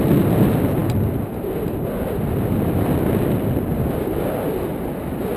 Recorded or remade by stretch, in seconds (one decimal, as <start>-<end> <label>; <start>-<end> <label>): 0.0-5.4 recorded